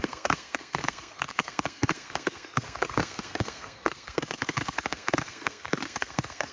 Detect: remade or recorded remade